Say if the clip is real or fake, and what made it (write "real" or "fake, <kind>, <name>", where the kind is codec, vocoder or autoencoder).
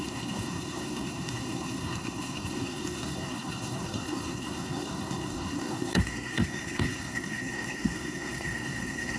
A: fake, codec, SNAC